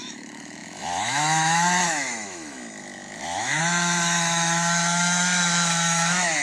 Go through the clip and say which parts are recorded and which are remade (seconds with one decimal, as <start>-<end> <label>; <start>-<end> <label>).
0.0-6.4 remade

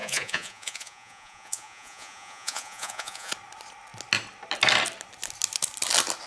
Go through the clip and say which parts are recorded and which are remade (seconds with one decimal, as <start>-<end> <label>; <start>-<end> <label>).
0.0-3.3 remade; 3.3-6.3 recorded

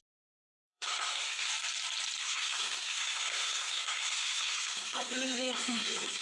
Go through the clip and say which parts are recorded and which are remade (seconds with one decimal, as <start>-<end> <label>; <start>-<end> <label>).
0.0-0.4 recorded; 0.4-1.5 remade; 1.5-2.2 recorded; 2.2-6.2 remade

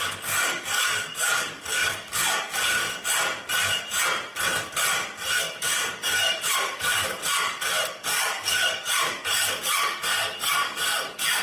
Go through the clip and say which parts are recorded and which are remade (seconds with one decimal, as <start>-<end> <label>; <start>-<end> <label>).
0.0-2.8 remade; 2.8-5.4 recorded; 5.4-11.4 remade